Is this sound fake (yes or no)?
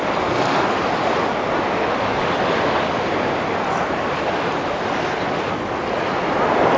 no